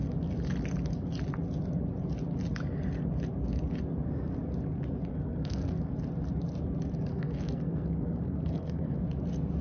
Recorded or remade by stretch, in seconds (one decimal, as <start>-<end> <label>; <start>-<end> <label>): 0.0-5.1 recorded; 5.1-5.9 remade; 5.9-7.1 recorded; 7.1-9.0 remade; 9.0-9.6 recorded